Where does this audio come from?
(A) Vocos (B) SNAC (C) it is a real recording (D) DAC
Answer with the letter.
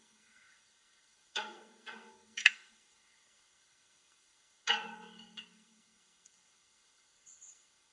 B